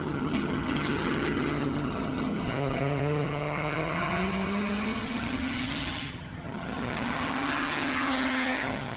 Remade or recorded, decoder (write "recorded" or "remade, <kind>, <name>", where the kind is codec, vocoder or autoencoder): remade, vocoder, HiFi-GAN